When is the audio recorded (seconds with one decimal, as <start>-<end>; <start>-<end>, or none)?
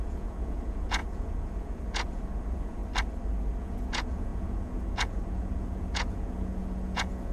2.8-3.6